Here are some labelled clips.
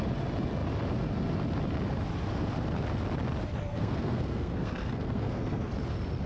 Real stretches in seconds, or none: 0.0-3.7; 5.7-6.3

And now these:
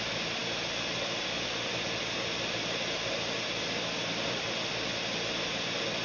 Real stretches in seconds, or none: 0.0-0.4; 4.0-6.0

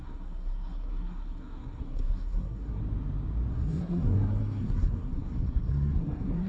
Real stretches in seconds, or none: 2.8-3.5

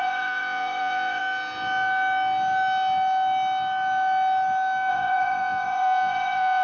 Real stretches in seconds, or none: 1.2-4.9